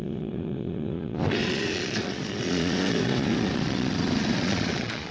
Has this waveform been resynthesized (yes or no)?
yes